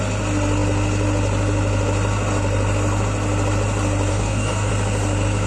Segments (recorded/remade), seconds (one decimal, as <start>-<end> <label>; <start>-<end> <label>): 0.0-4.1 recorded; 4.1-4.7 remade; 4.7-5.5 recorded